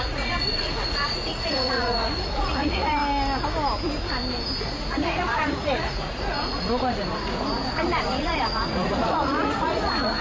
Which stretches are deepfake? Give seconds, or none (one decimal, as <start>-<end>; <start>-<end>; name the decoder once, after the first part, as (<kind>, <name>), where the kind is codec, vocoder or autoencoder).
0.0-3.0 (vocoder, Vocos); 4.6-10.2